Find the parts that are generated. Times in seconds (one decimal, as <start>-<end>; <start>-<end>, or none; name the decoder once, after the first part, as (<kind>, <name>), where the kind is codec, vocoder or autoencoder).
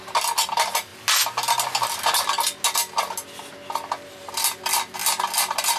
none